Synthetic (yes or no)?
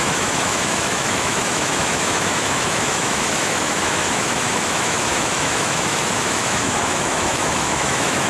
yes